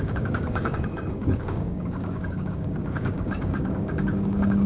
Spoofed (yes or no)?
yes